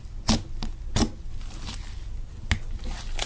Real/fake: real